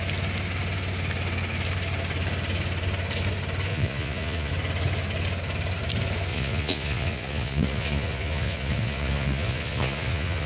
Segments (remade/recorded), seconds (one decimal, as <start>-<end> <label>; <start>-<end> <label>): 0.0-3.7 recorded; 3.7-4.5 remade; 4.5-6.3 recorded; 6.3-10.5 remade